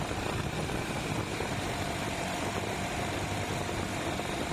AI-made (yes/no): yes